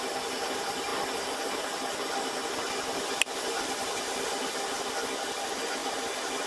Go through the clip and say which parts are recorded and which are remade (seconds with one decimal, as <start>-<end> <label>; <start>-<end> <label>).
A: 0.0-6.5 recorded